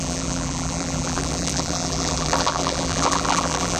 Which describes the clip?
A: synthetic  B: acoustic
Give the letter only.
A